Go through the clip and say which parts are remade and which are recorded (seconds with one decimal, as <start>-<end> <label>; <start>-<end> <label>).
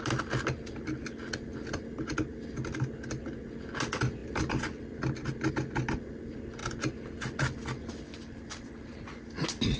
0.0-9.8 recorded